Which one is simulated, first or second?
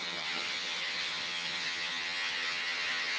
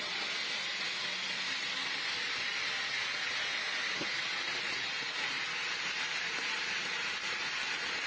first